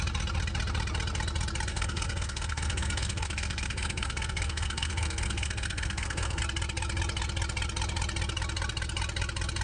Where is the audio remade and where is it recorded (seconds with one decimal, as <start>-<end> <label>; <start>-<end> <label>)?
0.0-1.7 recorded; 1.7-6.4 remade; 6.4-9.6 recorded